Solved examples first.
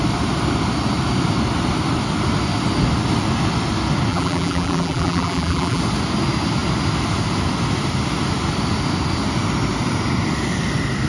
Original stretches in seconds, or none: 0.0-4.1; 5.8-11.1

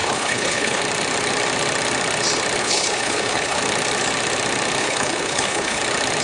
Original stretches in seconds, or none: 0.8-2.6; 3.6-4.8; 5.8-6.2

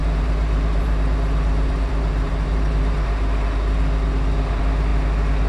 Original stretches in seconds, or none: 3.3-5.5

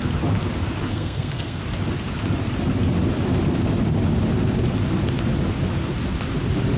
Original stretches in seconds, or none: 0.0-0.9; 1.6-6.8

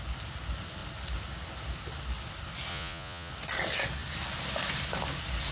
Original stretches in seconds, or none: 0.0-2.7; 3.3-5.5

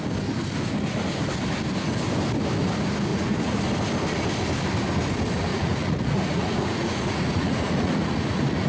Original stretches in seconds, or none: 0.0-3.1; 3.6-5.5